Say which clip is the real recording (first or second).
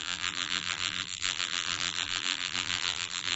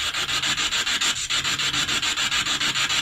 second